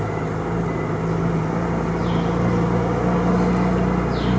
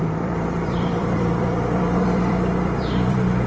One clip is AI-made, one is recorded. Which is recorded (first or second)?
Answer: first